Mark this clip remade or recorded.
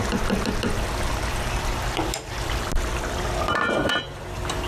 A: remade